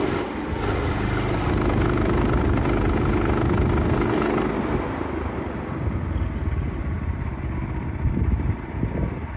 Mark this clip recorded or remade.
recorded